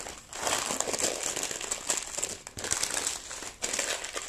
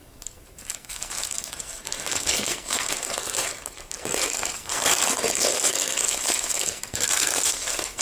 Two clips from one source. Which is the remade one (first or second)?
second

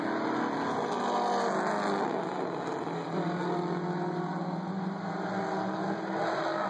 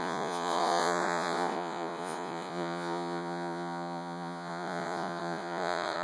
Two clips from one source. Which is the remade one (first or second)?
second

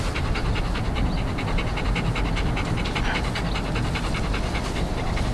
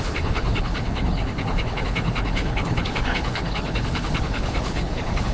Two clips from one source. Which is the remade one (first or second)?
second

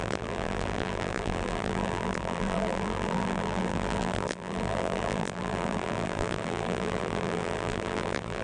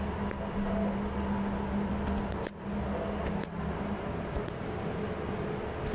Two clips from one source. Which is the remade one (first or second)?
first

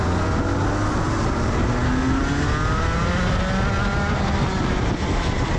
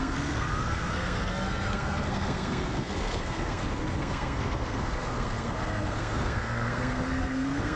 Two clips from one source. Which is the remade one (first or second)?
second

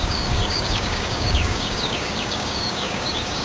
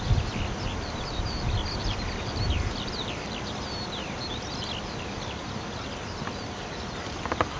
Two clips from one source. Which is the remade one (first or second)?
first